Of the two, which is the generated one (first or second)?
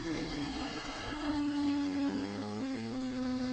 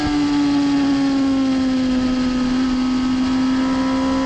first